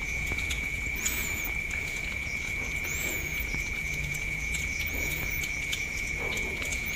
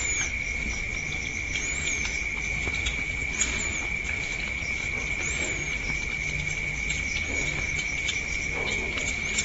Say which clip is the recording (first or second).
second